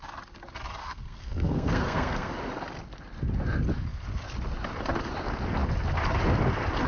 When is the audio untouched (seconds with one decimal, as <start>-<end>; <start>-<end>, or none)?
0.0-0.8; 2.3-6.9